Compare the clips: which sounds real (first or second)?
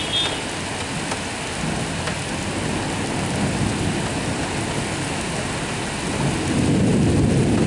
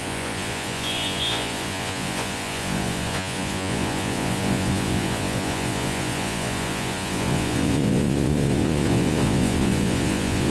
first